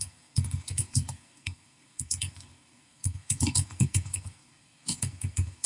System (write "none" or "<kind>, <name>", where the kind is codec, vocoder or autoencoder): codec, SNAC